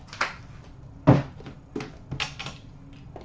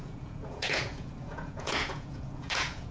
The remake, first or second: second